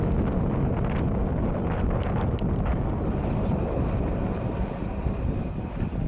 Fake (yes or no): no